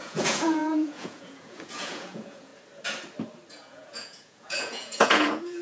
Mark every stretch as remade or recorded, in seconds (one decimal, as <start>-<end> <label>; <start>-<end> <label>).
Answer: 0.0-2.5 remade; 2.5-3.5 recorded; 3.5-5.6 remade